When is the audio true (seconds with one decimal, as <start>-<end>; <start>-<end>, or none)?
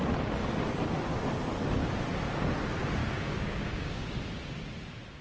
0.0-3.0; 4.1-5.2